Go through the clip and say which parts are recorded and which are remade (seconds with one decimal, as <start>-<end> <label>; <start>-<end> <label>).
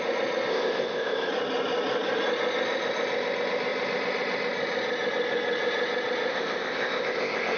0.0-0.5 recorded; 0.5-1.3 remade; 1.3-6.3 recorded; 6.3-7.6 remade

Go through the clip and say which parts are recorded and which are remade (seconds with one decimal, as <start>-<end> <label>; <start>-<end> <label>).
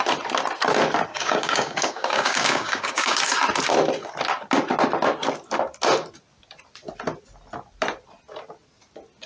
0.0-1.1 recorded; 1.1-3.2 remade; 3.2-9.3 recorded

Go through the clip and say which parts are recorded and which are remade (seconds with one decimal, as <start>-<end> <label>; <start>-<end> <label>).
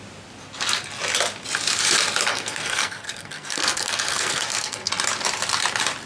0.0-2.3 recorded; 2.3-4.9 remade; 4.9-6.1 recorded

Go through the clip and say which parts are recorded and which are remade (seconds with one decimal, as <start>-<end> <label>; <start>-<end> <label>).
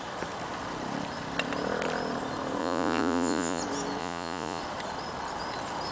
0.0-2.6 recorded; 2.6-3.6 remade; 3.6-4.0 recorded; 4.0-4.6 remade; 4.6-5.9 recorded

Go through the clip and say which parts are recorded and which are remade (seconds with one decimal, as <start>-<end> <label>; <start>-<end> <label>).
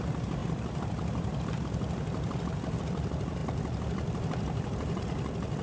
0.0-0.4 recorded; 0.4-2.8 remade; 2.8-3.4 recorded; 3.4-5.0 remade; 5.0-5.6 recorded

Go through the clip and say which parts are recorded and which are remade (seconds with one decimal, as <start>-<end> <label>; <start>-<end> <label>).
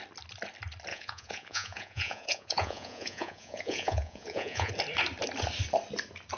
0.0-0.9 recorded; 0.9-4.7 remade; 4.7-6.4 recorded